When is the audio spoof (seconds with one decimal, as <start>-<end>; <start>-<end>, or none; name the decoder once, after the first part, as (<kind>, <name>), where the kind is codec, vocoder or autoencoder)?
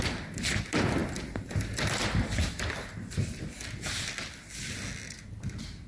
none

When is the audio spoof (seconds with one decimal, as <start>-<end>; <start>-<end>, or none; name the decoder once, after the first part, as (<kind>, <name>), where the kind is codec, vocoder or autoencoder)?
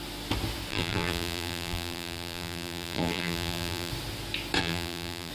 0.7-3.9 (vocoder, BigVGAN v2); 4.6-5.3